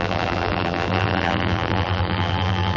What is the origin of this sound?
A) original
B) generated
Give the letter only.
B